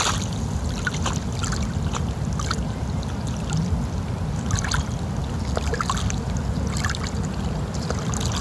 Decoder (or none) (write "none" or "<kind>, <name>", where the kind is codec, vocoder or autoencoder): none